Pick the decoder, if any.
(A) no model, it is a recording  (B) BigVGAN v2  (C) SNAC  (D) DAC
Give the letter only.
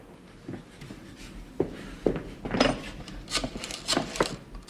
A